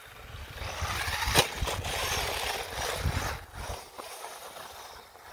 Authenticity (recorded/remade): recorded